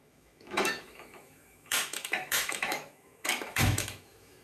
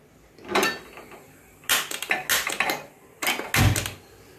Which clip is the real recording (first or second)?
second